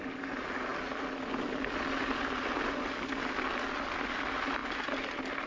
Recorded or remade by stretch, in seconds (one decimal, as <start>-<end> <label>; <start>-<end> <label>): 0.0-5.5 recorded